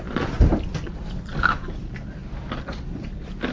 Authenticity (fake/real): real